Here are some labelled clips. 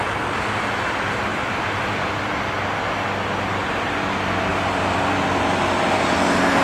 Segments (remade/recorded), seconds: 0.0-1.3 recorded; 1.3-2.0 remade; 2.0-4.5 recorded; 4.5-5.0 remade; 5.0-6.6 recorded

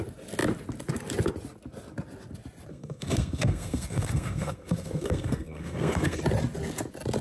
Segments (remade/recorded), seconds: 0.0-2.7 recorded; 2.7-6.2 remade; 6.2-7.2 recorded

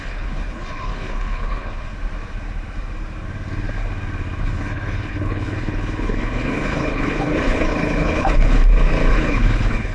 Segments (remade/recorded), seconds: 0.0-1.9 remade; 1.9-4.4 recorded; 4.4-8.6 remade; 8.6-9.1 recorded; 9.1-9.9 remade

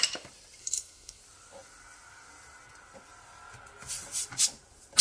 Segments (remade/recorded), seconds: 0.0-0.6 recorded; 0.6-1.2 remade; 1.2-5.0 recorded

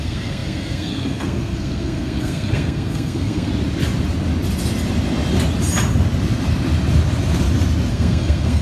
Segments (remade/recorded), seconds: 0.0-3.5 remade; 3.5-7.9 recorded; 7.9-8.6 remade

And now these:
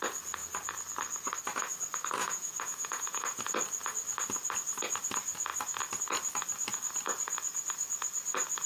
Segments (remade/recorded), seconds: 0.0-2.2 recorded; 2.2-3.4 remade; 3.4-8.7 recorded